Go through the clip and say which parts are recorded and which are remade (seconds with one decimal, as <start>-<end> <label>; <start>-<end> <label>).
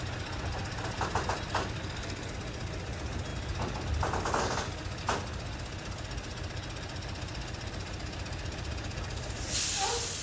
0.0-1.8 recorded; 1.8-2.3 remade; 2.3-10.2 recorded